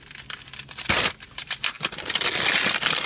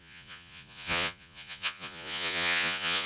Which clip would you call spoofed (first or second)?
second